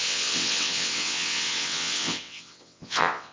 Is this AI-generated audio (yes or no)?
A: yes